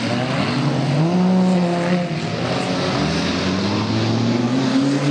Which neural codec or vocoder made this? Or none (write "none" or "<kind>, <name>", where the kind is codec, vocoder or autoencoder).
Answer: none